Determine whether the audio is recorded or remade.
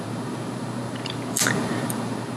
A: remade